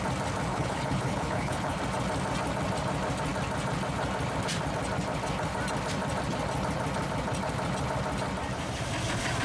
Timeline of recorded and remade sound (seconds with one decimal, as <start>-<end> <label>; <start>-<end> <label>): 0.0-0.5 recorded; 0.5-1.8 remade; 1.8-9.4 recorded